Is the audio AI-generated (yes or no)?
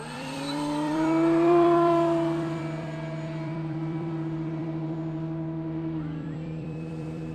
yes